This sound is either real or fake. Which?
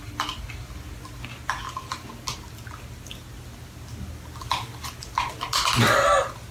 real